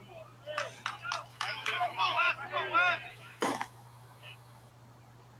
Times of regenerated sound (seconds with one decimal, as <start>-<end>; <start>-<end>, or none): 1.3-2.3; 3.1-4.7